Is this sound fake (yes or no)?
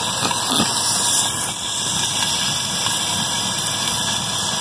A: no